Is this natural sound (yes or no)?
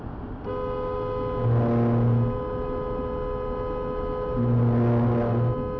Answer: yes